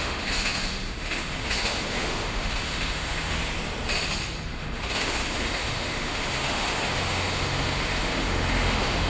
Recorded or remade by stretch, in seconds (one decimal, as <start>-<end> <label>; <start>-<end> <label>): 0.0-3.4 remade; 3.4-4.5 recorded; 4.5-9.1 remade